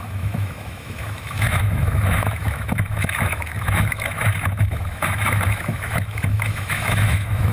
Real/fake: fake